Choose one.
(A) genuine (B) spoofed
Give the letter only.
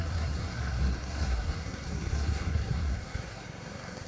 B